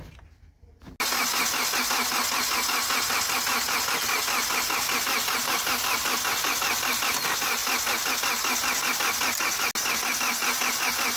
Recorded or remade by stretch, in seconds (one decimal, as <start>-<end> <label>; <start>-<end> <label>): 0.0-11.2 recorded